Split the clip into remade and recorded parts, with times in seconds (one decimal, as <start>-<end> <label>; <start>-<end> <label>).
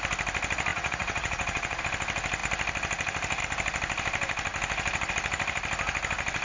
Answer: 0.0-0.7 recorded; 0.7-1.8 remade; 1.8-6.4 recorded